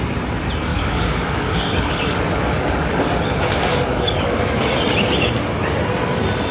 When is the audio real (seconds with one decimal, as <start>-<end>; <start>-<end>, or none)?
0.0-0.7; 3.1-3.7; 4.7-6.5